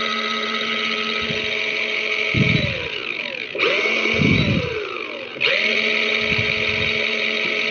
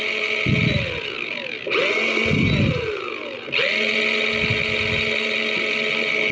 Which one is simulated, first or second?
first